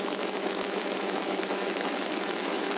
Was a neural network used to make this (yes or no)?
yes